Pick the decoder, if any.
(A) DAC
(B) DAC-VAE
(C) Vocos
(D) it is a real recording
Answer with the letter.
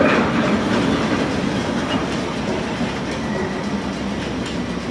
D